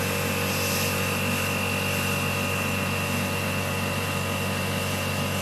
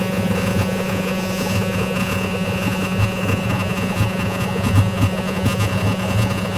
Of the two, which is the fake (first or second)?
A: second